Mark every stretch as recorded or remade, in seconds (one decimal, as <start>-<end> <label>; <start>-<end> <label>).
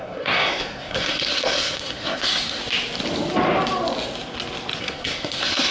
0.0-2.6 remade; 2.6-4.8 recorded; 4.8-5.7 remade